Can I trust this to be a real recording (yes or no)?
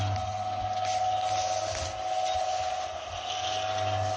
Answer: yes